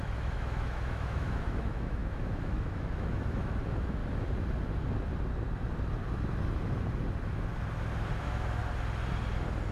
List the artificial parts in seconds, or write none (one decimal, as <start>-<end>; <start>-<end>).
0.0-4.0; 8.2-8.6